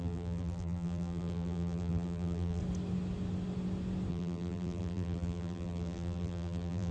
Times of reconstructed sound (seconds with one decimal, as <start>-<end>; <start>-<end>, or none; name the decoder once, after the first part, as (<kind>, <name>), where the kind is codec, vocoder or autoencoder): 0.0-2.6 (vocoder, BigVGAN v2); 4.1-6.9